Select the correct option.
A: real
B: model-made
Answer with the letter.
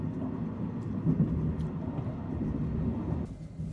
A